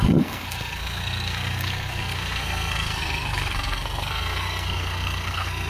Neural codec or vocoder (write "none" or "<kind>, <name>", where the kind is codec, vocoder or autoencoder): codec, SNAC